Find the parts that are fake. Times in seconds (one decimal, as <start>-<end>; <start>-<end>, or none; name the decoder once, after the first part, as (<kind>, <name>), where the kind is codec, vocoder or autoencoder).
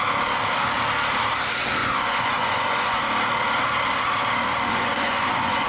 1.8-3.0 (vocoder, Vocos); 4.7-5.7